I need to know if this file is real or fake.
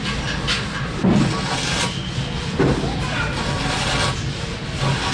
real